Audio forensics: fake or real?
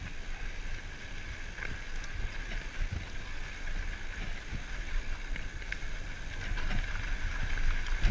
real